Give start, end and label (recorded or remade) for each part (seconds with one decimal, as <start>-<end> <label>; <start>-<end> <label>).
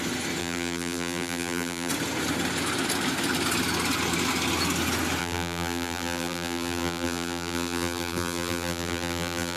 0.0-0.4 recorded; 0.4-1.9 remade; 1.9-5.2 recorded; 5.2-9.6 remade